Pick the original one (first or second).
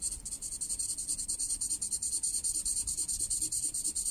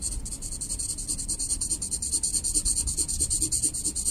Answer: second